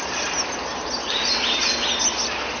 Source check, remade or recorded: recorded